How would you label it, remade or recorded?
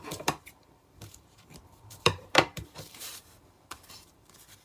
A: remade